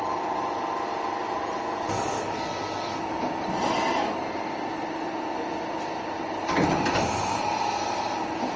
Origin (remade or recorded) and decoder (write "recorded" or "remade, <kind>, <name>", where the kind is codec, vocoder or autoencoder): recorded